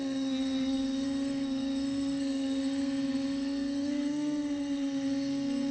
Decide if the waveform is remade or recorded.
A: remade